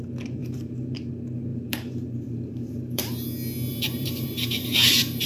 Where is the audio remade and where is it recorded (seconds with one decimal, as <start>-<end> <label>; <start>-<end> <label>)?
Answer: 0.0-0.4 recorded; 0.4-1.1 remade; 1.1-1.5 recorded; 1.5-3.2 remade; 3.2-3.7 recorded; 3.7-5.3 remade